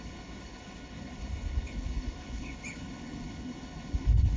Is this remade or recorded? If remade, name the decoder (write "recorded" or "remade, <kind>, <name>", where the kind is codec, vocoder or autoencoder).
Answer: remade, codec, HILCodec